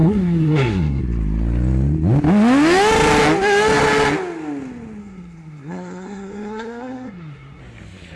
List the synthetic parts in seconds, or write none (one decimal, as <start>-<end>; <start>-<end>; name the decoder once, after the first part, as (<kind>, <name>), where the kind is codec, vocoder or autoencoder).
0.0-1.0 (codec, SNAC); 5.0-7.6